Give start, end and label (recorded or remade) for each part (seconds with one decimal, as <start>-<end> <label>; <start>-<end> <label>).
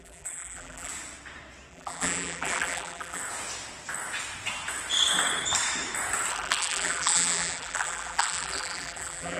0.0-0.9 remade; 0.9-1.7 recorded; 1.7-3.2 remade; 3.2-6.3 recorded; 6.3-9.4 remade